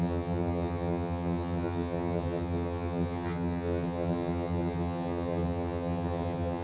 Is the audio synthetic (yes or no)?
yes